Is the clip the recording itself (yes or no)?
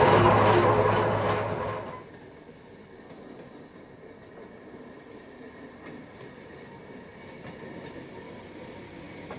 yes